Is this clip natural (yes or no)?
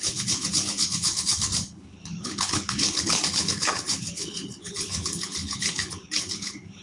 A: no